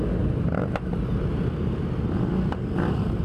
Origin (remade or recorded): recorded